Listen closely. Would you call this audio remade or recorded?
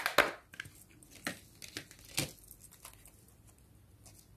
recorded